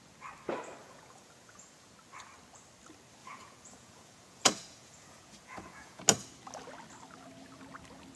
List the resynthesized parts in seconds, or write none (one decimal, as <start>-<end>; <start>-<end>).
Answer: 0.8-1.9; 3.2-6.0